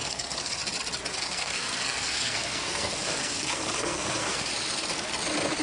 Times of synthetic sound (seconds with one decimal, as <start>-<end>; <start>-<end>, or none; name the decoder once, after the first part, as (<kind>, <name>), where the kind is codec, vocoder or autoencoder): 0.0-0.6 (codec, SNAC); 1.1-4.5